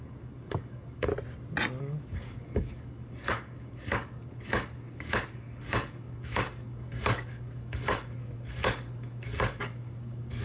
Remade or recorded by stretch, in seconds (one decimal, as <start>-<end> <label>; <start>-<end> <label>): 0.0-1.1 remade; 1.1-1.8 recorded; 1.8-10.4 remade